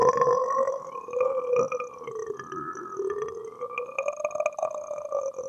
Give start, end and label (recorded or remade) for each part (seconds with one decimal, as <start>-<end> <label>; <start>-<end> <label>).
0.0-1.5 remade; 1.5-5.5 recorded